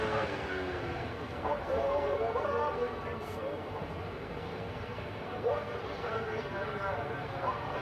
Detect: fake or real fake